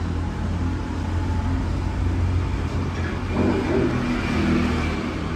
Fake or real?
real